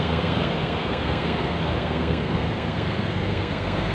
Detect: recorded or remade remade